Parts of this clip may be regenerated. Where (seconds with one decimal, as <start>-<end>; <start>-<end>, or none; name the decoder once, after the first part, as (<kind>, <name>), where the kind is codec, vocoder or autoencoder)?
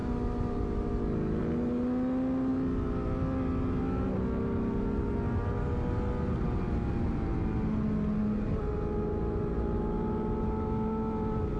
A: none